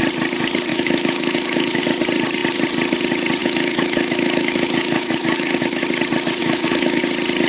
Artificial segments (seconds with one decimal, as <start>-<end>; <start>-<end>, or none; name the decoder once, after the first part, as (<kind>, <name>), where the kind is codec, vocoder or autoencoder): 0.7-1.8 (autoencoder, DAC-VAE); 3.4-5.8; 6.4-7.0